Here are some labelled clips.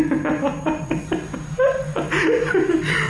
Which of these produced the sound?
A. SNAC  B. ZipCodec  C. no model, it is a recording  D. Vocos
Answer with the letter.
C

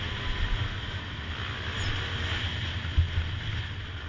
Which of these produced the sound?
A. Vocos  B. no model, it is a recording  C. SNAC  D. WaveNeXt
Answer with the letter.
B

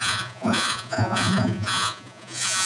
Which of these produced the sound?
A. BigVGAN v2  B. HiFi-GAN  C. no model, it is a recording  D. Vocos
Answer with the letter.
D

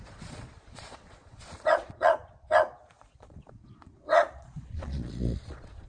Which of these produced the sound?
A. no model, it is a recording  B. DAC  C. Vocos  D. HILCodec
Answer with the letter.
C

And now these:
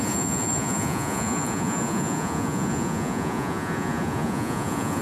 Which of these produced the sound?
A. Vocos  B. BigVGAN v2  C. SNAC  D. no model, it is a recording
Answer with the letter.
A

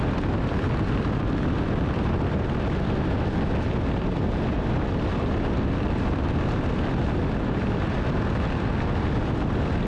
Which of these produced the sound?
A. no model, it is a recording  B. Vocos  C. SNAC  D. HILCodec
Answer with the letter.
A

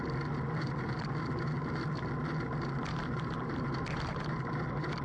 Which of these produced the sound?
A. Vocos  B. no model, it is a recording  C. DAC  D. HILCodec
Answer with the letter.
B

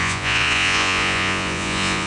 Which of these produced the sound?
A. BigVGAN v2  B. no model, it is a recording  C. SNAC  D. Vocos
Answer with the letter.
D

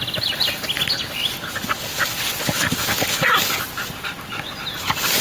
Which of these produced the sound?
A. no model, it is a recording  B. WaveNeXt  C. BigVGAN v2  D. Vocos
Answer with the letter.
A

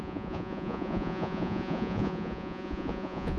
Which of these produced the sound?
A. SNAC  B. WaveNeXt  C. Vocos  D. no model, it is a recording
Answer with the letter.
C